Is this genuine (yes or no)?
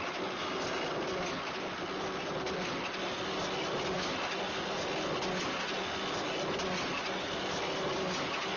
yes